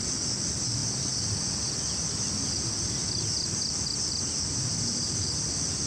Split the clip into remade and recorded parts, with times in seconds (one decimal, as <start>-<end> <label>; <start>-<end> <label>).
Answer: 0.0-5.9 remade